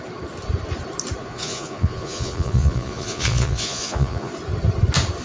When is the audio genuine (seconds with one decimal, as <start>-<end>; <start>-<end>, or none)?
0.0-1.2; 4.3-5.2